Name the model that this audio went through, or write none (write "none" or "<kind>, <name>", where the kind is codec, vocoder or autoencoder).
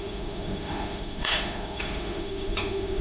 autoencoder, DAC-VAE